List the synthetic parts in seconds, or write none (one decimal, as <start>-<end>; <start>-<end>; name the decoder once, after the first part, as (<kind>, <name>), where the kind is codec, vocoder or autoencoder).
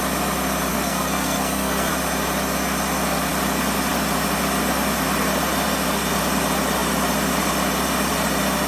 0.7-1.9 (codec, SNAC)